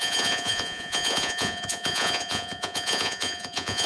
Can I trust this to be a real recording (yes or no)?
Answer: no